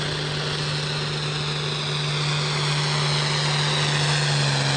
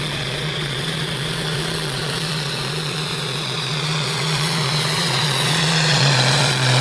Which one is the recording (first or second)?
first